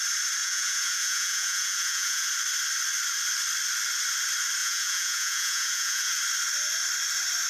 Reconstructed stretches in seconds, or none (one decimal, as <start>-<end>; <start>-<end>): 0.4-2.3; 4.6-6.1